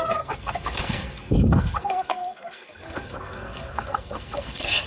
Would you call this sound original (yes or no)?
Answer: no